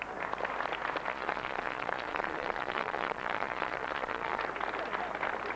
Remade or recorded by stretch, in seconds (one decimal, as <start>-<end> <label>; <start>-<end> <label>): 0.0-1.1 recorded; 1.1-4.4 remade; 4.4-5.6 recorded